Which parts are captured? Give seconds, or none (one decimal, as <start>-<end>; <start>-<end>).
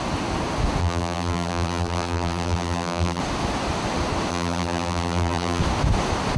0.0-0.8; 3.2-4.3; 5.6-6.4